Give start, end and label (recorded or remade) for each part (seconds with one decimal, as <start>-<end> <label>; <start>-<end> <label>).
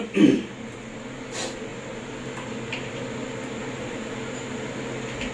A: 0.0-5.3 recorded